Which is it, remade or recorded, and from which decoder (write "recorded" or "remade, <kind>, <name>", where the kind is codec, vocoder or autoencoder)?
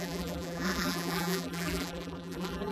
remade, vocoder, BigVGAN v2